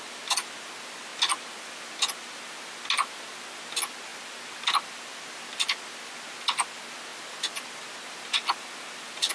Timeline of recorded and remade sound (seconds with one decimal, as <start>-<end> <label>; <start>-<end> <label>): 0.0-9.3 recorded

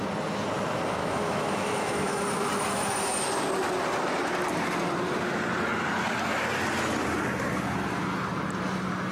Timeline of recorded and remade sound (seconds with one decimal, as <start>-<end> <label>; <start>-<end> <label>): 0.0-1.0 recorded; 1.0-2.2 remade; 2.2-9.1 recorded

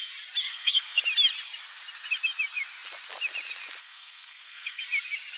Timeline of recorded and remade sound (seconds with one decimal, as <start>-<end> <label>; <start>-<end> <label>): 0.0-0.4 recorded; 0.4-1.0 remade; 1.0-3.8 recorded; 3.8-4.8 remade; 4.8-5.4 recorded

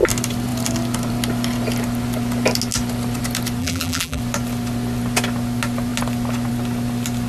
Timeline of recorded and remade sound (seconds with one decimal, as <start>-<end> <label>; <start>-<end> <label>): 0.0-3.6 recorded; 3.6-4.2 remade; 4.2-7.3 recorded